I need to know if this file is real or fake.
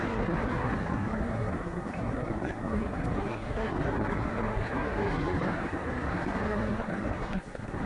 fake